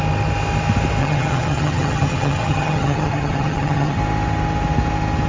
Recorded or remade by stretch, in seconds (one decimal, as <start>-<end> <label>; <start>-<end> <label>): 0.0-1.0 recorded; 1.0-4.0 remade; 4.0-5.3 recorded